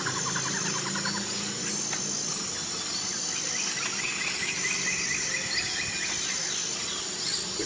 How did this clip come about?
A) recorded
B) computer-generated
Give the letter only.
A